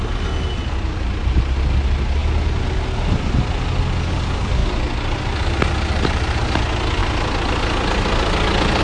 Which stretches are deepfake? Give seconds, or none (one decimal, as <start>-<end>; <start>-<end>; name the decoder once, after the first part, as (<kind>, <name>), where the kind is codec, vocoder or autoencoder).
none